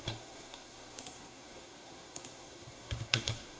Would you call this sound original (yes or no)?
no